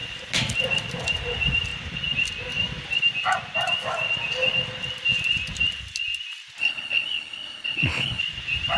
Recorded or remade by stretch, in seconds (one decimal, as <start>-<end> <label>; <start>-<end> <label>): 0.0-6.6 recorded; 6.6-8.2 remade; 8.2-8.8 recorded